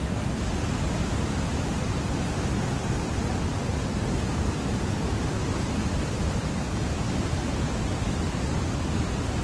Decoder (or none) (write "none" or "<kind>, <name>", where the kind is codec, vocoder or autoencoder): none